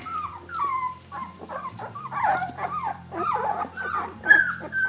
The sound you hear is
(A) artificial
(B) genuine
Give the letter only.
A